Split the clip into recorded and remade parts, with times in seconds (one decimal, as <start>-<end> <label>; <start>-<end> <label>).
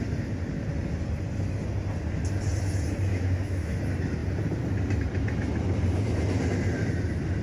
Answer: 0.0-3.1 recorded; 3.1-3.8 remade; 3.8-7.4 recorded